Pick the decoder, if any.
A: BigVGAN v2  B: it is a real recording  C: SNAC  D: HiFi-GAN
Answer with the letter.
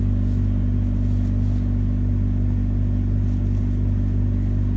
B